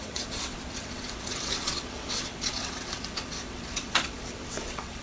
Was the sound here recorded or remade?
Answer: remade